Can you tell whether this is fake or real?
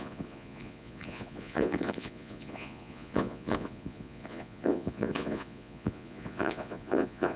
fake